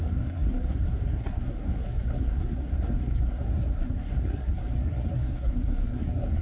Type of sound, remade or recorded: remade